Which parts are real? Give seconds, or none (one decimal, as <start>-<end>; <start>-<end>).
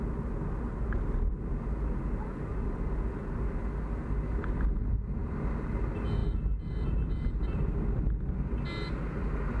0.0-9.6